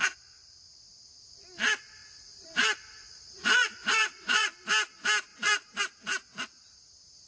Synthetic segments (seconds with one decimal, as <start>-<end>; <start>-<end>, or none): 2.0-4.5; 5.3-5.8